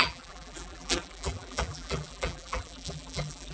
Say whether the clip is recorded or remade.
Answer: remade